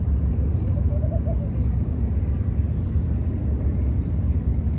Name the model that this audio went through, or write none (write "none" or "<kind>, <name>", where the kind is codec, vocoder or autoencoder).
none